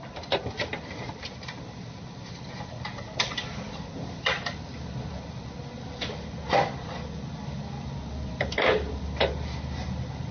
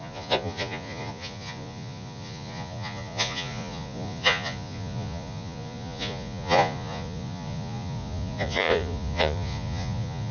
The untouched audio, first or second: first